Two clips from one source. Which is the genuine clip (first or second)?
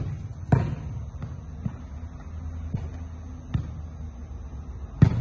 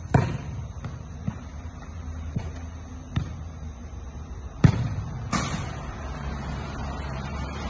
first